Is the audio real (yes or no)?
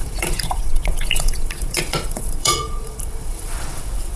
no